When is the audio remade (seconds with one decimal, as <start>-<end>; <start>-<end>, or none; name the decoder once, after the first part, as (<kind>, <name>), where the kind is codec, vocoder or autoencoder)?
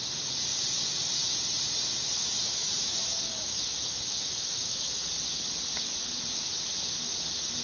2.0-5.0 (autoencoder, DAC-VAE)